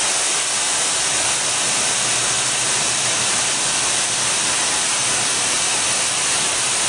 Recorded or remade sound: recorded